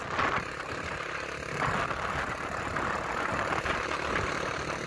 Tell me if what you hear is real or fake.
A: real